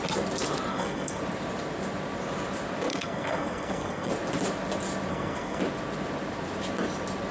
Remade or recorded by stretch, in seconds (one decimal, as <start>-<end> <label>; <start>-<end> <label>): 0.0-0.7 recorded; 0.7-1.2 remade; 1.2-2.9 recorded; 2.9-4.1 remade; 4.1-5.1 recorded; 5.1-5.6 remade; 5.6-7.3 recorded